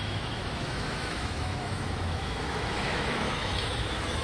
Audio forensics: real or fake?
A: fake